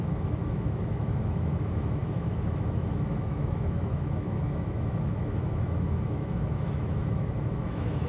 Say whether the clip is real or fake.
fake